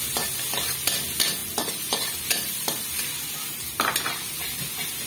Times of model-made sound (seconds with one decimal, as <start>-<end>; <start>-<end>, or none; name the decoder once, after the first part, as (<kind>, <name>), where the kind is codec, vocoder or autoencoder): 1.4-3.6 (vocoder, BigVGAN v2)